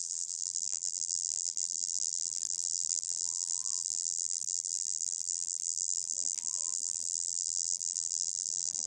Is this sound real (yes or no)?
no